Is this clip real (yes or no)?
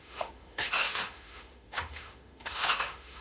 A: no